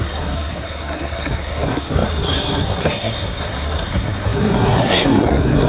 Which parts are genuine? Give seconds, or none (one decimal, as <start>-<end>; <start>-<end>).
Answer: none